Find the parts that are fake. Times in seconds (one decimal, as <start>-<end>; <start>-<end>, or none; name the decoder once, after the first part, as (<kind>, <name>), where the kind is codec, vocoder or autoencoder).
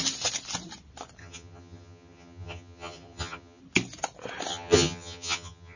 1.2-3.6 (vocoder, HiFi-GAN); 4.5-5.8